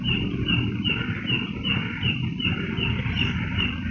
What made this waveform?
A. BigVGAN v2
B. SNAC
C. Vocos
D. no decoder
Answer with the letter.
A